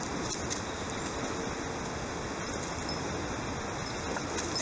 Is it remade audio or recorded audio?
recorded